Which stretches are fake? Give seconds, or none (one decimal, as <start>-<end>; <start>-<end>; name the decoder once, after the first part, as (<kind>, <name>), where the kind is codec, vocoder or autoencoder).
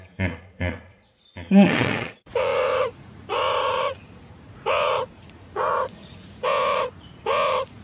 0.0-7.8 (vocoder, Vocos)